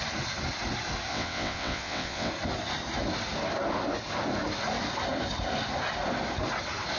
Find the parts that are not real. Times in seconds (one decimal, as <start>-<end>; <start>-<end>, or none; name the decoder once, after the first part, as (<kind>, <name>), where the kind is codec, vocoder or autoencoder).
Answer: 1.1-2.3 (vocoder, WaveNeXt)